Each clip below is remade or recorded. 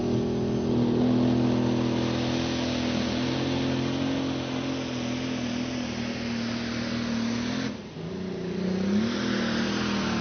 recorded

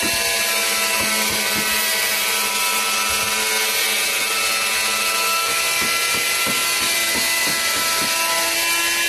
recorded